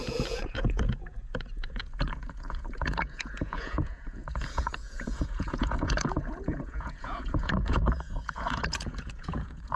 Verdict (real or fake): fake